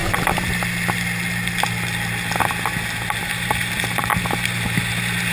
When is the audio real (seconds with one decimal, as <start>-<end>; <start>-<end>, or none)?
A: 0.0-3.2; 4.1-5.3